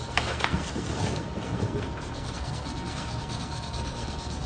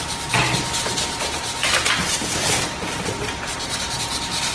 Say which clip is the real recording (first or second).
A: second